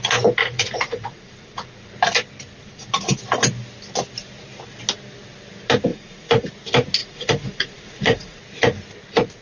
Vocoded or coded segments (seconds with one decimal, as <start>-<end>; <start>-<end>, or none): 0.4-1.9; 2.6-3.2; 5.9-6.5; 7.0-8.4